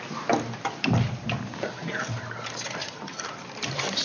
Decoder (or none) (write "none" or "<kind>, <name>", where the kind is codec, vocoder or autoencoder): none